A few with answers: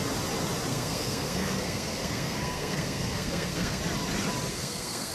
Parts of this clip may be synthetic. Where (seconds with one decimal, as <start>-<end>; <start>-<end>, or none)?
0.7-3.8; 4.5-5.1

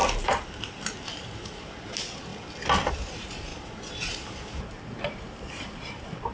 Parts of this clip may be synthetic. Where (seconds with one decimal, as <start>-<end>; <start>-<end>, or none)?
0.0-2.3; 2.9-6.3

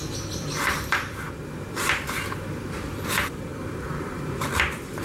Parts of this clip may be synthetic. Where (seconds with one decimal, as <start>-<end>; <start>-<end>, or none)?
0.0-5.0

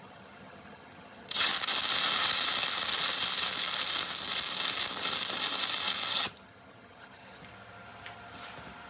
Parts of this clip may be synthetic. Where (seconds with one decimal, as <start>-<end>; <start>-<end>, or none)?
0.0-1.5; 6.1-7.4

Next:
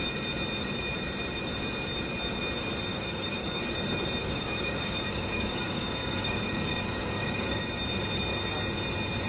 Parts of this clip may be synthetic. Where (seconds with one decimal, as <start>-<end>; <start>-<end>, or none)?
2.9-3.6; 4.2-7.6